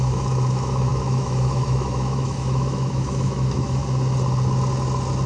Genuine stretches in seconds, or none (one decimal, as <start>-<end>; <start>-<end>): 3.8-5.3